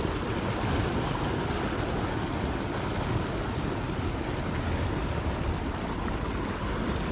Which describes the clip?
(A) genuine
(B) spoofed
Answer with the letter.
A